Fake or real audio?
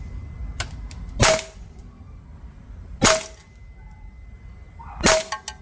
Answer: real